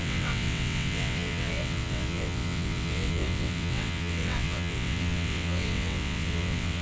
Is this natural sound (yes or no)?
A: no